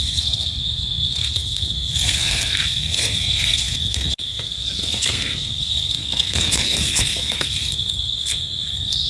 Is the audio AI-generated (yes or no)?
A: yes